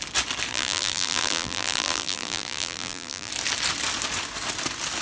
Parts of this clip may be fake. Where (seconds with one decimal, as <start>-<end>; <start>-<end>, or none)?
0.5-3.3